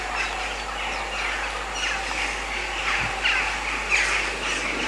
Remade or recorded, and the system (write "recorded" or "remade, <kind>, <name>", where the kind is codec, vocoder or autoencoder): recorded